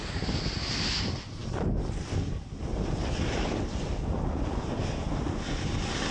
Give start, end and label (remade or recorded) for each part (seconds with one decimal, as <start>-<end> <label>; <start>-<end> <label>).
0.0-6.1 recorded